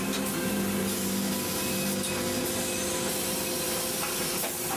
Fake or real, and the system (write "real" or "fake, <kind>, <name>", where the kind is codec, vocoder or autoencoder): real